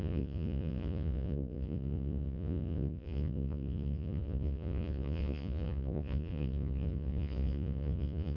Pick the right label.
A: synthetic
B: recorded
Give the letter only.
A